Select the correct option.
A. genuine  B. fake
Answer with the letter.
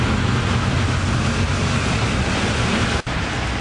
A